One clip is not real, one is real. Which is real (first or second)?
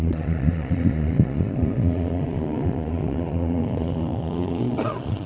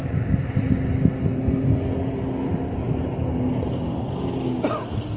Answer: second